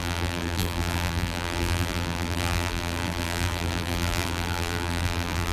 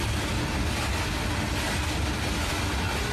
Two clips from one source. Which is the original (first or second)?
second